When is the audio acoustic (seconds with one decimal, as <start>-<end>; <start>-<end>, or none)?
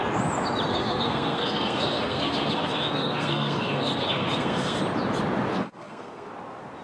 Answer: 0.0-0.7; 4.8-5.5; 6.3-6.8